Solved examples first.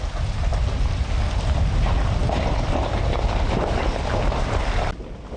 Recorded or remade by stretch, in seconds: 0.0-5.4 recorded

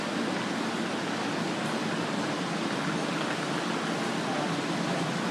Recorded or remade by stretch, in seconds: 0.0-5.3 recorded

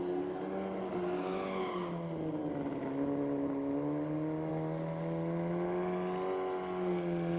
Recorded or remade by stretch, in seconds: 0.0-7.4 recorded

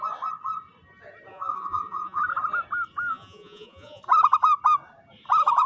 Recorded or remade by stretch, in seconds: 0.0-1.3 recorded; 1.3-2.2 remade; 2.2-3.1 recorded; 3.1-4.0 remade; 4.0-5.7 recorded

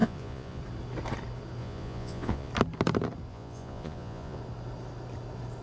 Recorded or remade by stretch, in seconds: 0.0-0.6 remade; 0.6-1.6 recorded; 1.6-2.5 remade; 2.5-3.3 recorded; 3.3-4.4 remade; 4.4-5.6 recorded